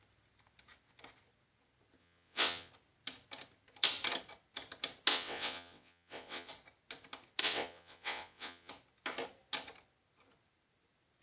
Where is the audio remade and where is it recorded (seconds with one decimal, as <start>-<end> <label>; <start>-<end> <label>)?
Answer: 0.0-2.0 recorded; 2.0-2.7 remade; 2.7-5.1 recorded; 5.1-6.5 remade; 6.5-7.4 recorded; 7.4-8.7 remade; 8.7-11.2 recorded